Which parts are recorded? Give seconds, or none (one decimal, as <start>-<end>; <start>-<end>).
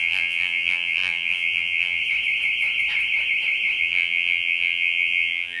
2.0-3.8